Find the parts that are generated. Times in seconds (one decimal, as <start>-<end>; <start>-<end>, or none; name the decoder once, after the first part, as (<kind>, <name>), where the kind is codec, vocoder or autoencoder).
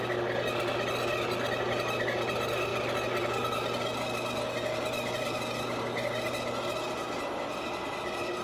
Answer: none